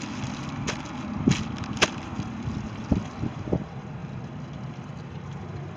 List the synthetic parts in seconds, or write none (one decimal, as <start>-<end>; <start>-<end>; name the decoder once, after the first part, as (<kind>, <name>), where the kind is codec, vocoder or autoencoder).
none